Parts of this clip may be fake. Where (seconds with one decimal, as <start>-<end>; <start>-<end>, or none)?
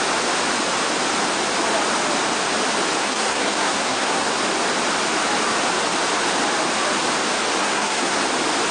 3.0-4.4; 7.6-8.2